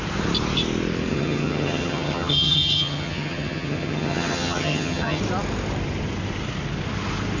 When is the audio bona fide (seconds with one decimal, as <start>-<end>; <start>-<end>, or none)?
0.0-1.1; 5.2-7.4